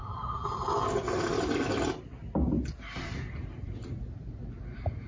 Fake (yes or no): no